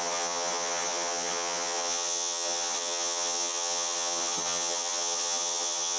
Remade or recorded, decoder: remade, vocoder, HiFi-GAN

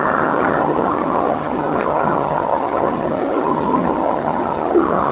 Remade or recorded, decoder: remade, vocoder, HiFi-GAN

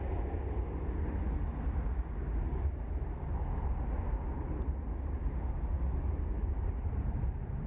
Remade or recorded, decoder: recorded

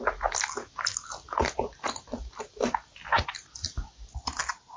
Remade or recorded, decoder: recorded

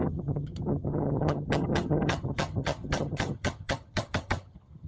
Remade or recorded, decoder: remade, vocoder, HiFi-GAN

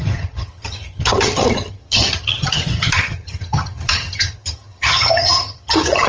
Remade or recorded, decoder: remade, vocoder, HiFi-GAN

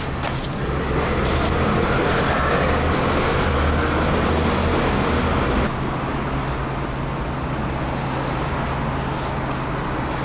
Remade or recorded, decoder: recorded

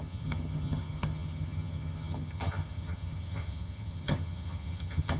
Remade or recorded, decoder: remade, vocoder, HiFi-GAN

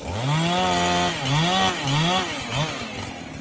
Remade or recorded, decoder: recorded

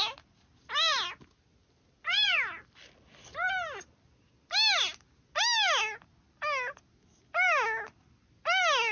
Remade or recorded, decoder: recorded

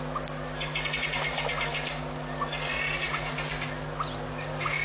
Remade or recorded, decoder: recorded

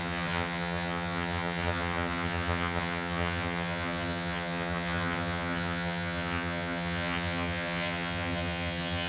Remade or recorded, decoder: remade, vocoder, HiFi-GAN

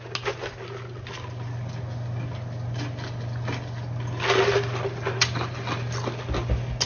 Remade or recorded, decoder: recorded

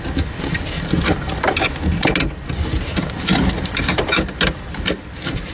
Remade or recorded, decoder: recorded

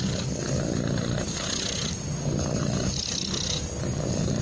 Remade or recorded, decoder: recorded